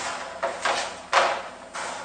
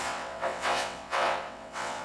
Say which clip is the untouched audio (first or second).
first